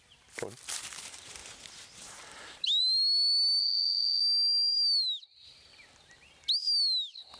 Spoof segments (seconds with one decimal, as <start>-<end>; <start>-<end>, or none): 3.6-4.2